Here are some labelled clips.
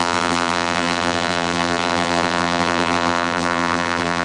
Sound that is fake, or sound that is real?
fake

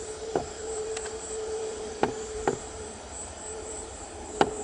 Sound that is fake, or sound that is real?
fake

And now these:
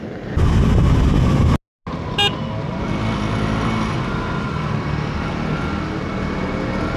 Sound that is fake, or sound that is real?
real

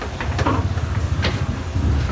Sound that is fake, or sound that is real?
fake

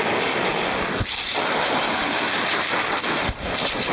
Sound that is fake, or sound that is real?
real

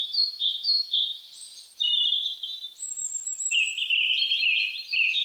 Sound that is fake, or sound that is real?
fake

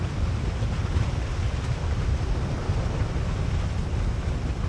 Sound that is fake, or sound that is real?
real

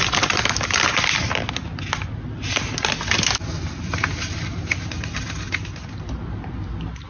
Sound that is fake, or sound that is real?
real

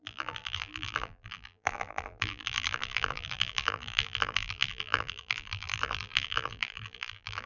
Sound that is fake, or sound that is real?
fake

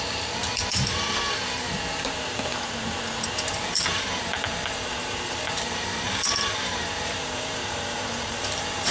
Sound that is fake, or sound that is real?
fake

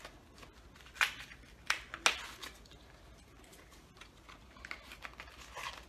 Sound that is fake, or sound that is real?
real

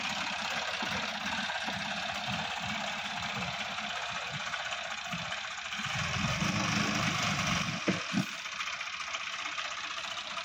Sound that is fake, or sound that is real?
real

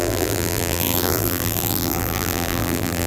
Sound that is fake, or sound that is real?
fake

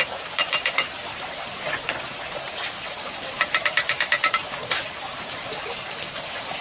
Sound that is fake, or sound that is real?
fake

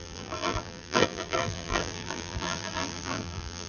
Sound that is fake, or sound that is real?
fake